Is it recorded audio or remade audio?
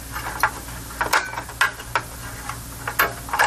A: recorded